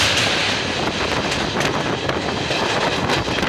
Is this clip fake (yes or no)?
no